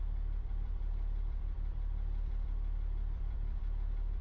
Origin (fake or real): fake